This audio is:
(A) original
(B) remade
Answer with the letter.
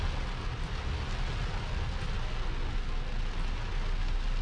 A